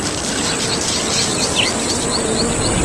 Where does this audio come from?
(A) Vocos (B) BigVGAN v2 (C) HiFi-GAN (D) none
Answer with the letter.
D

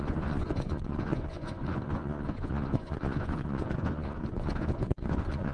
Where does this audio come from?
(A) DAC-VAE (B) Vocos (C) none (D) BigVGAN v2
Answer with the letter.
B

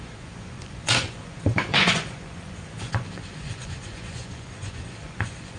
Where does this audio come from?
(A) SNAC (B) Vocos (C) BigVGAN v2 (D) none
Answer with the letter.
B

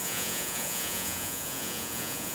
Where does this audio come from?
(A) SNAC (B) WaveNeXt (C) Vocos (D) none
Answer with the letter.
C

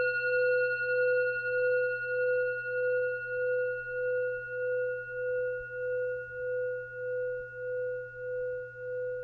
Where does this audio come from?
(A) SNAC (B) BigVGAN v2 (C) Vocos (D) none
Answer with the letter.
D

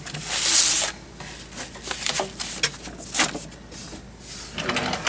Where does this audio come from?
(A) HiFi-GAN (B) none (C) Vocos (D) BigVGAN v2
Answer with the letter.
B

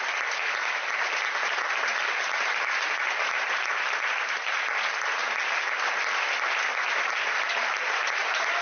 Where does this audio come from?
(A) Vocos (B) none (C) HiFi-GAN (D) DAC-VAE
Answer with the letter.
B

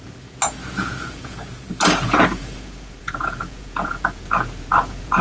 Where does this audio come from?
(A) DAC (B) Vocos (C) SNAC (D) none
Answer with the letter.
B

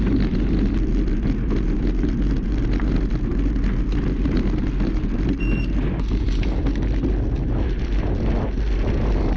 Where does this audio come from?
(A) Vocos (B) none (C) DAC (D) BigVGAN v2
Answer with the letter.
B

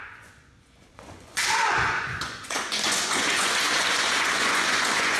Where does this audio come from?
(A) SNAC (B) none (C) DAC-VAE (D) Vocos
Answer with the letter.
D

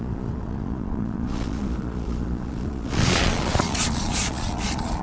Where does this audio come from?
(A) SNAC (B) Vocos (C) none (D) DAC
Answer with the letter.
B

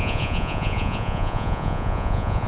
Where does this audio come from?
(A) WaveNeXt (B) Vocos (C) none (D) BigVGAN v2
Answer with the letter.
B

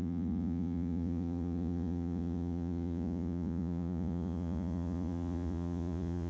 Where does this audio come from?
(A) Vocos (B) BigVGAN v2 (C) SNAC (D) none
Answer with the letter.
A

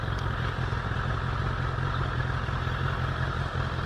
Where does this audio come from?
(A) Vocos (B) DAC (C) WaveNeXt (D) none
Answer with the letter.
D